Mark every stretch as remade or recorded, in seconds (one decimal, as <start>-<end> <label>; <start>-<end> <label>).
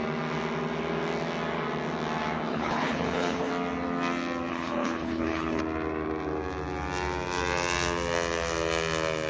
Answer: 0.0-2.5 recorded; 2.5-3.5 remade; 3.5-4.5 recorded; 4.5-5.6 remade; 5.6-9.3 recorded